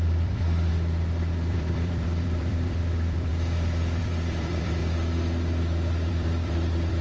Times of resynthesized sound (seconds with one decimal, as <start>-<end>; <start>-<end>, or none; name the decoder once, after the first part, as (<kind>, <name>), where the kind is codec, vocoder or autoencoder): 0.0-0.7 (vocoder, BigVGAN v2); 1.5-3.3; 4.0-4.8; 6.1-7.0